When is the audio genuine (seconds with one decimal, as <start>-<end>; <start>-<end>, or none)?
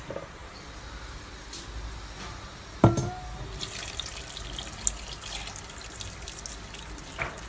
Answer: 0.0-7.5